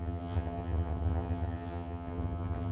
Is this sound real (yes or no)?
no